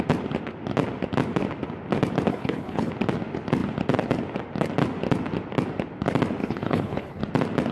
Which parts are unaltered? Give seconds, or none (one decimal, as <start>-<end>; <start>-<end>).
0.0-2.3; 2.9-6.4; 7.2-7.7